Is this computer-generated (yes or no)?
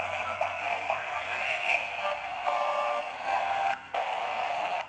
yes